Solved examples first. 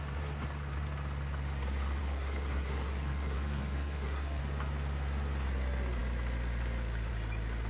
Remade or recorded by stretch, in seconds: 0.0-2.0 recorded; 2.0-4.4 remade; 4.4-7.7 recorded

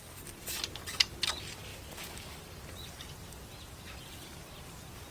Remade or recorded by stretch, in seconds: 0.0-5.1 recorded